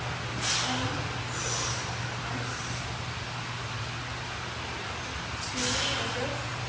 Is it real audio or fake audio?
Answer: real